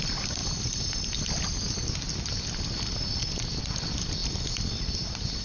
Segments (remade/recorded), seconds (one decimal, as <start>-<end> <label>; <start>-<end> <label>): 0.0-5.4 recorded